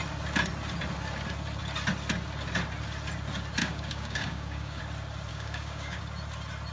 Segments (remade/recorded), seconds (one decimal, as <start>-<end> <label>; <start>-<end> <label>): 0.0-3.6 recorded; 3.6-4.8 remade; 4.8-5.3 recorded; 5.3-6.0 remade; 6.0-6.7 recorded